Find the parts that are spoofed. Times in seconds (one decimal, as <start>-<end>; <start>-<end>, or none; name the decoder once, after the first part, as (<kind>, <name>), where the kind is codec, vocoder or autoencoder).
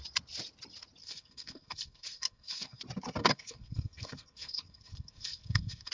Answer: 1.0-2.8 (codec, SNAC); 3.2-5.9